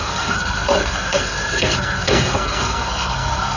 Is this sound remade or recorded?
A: remade